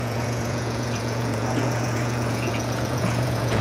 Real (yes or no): no